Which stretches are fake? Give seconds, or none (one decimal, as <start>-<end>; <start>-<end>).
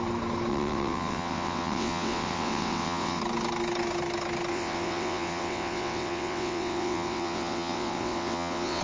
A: 0.5-3.2; 4.5-8.8